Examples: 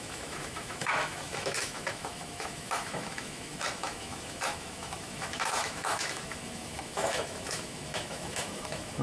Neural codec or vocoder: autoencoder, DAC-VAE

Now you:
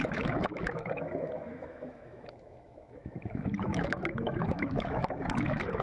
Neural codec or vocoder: autoencoder, DAC-VAE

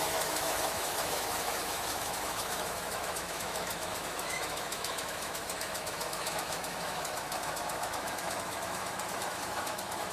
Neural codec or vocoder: autoencoder, DAC-VAE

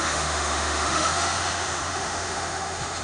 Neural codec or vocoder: autoencoder, DAC-VAE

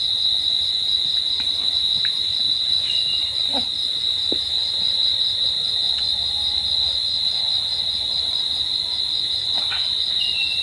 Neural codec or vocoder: none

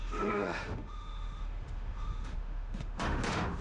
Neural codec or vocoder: autoencoder, DAC-VAE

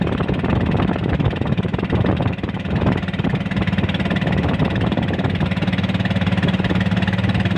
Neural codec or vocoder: none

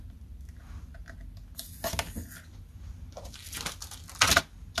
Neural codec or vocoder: none